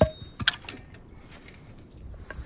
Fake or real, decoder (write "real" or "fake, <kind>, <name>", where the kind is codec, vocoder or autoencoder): real